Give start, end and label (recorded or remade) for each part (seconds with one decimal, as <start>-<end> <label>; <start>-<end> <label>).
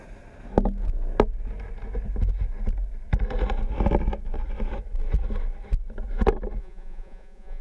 0.0-6.6 recorded; 6.6-7.6 remade